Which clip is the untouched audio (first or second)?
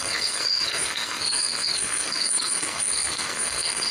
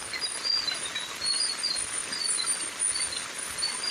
second